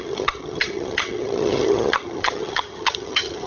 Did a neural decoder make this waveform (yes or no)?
yes